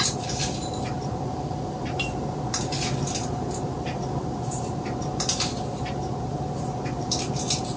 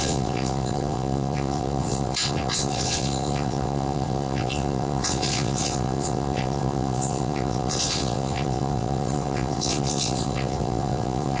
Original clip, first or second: first